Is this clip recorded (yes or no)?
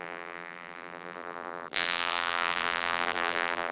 no